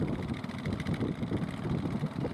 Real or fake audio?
real